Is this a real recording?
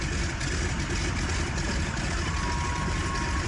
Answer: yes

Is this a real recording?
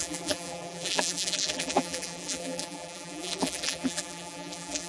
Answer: no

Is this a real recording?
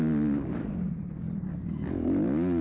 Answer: yes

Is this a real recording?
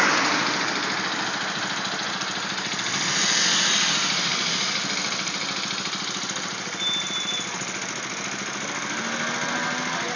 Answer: yes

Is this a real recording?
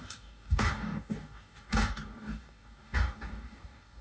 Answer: no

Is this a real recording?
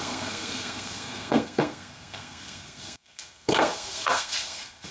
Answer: no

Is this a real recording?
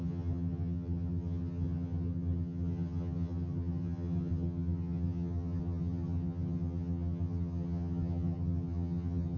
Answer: no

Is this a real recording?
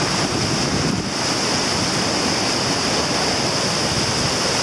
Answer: yes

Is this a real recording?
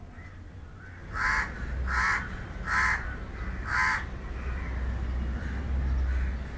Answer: yes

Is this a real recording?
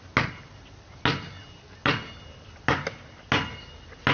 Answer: yes